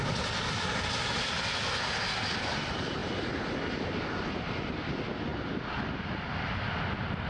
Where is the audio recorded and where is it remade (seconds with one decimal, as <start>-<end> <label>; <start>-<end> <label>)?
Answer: 0.0-7.3 recorded